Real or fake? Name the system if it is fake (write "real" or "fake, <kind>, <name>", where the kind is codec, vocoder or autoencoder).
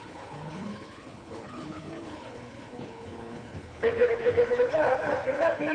fake, codec, HILCodec